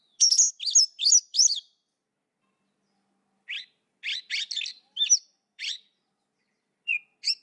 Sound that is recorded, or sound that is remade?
recorded